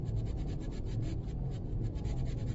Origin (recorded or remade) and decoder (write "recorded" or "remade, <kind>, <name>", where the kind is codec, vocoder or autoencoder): recorded